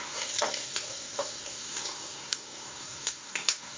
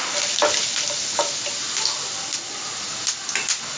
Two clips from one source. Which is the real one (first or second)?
second